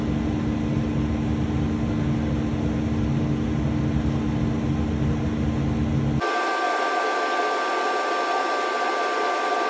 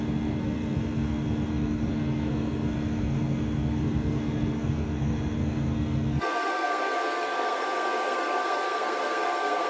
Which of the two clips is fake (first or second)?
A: second